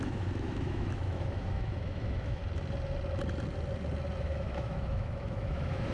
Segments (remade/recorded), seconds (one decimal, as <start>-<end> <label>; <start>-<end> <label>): 0.0-2.4 remade; 2.4-4.2 recorded; 4.2-5.9 remade